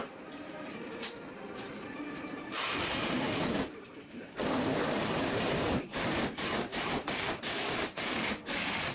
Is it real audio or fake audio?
fake